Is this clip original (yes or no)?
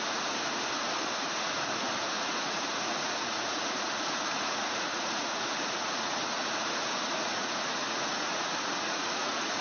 no